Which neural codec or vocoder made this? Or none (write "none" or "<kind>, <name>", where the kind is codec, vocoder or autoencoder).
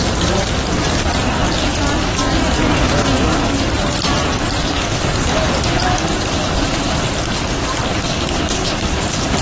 none